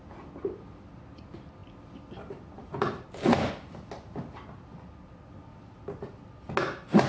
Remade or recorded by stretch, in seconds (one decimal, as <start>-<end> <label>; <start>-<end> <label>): 0.0-7.1 recorded